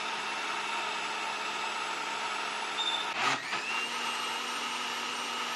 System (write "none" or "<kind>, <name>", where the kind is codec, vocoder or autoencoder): none